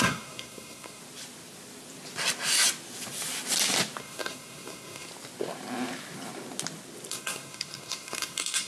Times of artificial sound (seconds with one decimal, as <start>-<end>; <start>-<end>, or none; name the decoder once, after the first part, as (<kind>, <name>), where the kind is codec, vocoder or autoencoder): 0.0-1.0 (codec, SNAC); 4.0-5.1; 7.1-8.7